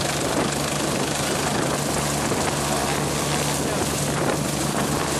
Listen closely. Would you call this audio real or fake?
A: real